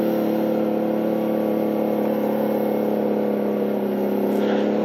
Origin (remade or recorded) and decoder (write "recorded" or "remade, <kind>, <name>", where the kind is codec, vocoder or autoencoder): recorded